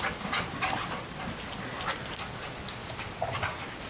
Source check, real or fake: real